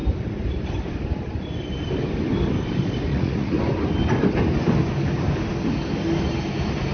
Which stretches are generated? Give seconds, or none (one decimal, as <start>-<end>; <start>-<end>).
3.1-3.6